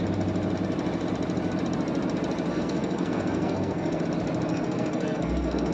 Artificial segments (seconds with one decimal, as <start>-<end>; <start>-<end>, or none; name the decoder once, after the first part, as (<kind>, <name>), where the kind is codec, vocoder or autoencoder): 2.5-4.0 (codec, SNAC); 4.5-5.7